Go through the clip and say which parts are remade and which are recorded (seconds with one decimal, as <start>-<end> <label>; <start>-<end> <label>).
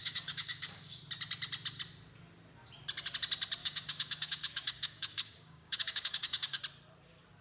0.0-1.0 remade; 1.0-3.6 recorded; 3.6-6.6 remade; 6.6-7.4 recorded